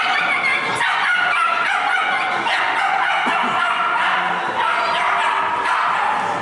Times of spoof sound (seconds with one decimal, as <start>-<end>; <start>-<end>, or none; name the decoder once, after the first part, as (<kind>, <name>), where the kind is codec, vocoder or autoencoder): 0.7-4.3 (vocoder, Vocos)